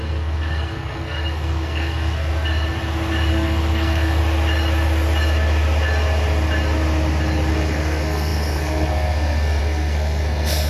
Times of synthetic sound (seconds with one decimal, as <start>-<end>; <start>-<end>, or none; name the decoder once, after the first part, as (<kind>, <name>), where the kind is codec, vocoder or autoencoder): 0.0-2.3 (codec, SNAC); 3.3-4.2; 7.5-10.7